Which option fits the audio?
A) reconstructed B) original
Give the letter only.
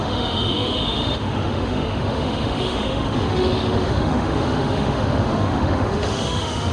A